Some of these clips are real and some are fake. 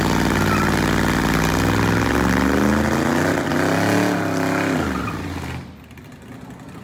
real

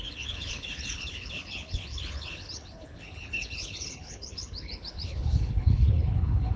fake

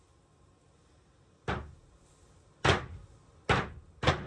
real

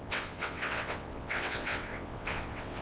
fake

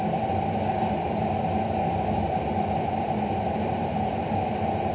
real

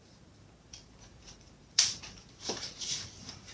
fake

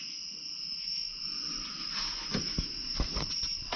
real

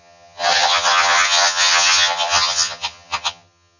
fake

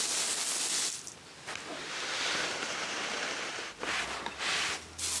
real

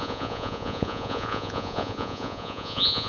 fake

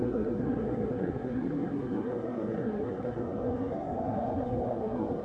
fake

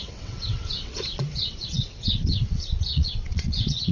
fake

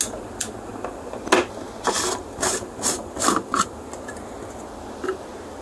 real